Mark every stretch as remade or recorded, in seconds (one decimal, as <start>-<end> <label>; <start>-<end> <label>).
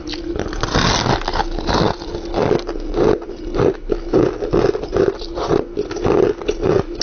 0.0-7.0 recorded